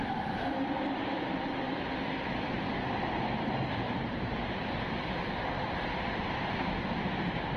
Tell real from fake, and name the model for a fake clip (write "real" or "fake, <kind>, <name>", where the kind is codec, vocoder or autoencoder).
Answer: real